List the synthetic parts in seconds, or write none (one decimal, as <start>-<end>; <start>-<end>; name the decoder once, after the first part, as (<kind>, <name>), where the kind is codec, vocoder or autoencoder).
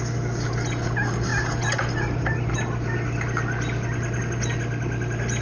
none